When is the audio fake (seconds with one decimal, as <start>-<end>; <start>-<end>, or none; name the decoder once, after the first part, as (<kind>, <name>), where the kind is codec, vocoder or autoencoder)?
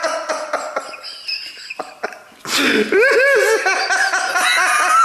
none